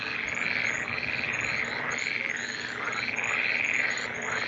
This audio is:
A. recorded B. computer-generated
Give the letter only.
A